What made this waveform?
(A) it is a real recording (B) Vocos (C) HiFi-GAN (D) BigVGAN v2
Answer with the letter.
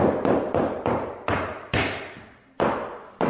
A